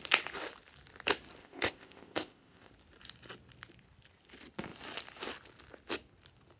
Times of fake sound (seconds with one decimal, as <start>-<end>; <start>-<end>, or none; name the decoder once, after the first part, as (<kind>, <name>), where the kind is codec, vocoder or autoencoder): 1.4-2.7 (codec, ZipCodec)